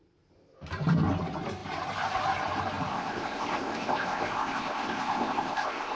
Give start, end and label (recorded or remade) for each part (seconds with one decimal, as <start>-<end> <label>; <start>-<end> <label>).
0.0-2.9 recorded; 2.9-6.0 remade